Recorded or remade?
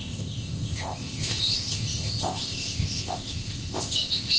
remade